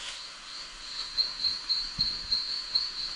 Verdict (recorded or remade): remade